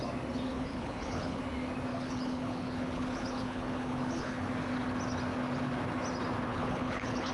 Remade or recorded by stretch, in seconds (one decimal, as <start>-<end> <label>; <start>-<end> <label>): 0.0-0.5 recorded; 0.5-1.4 remade; 1.4-1.9 recorded; 1.9-4.5 remade; 4.5-6.5 recorded; 6.5-7.3 remade